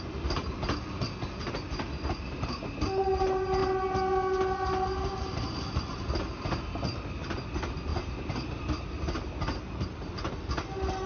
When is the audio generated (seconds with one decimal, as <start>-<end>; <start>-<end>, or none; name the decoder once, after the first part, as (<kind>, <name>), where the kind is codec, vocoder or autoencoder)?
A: none